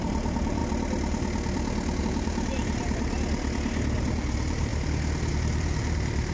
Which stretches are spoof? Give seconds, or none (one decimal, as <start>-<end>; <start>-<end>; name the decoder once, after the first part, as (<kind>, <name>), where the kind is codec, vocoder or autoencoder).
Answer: 0.0-0.6 (vocoder, BigVGAN v2); 2.0-3.1; 4.0-4.7; 5.3-6.3